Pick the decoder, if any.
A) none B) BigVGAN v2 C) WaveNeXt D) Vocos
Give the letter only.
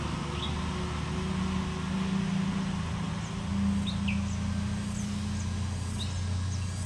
A